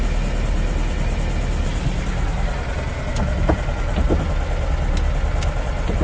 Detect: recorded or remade recorded